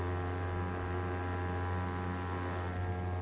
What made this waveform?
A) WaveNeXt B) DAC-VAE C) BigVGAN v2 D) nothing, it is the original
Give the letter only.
D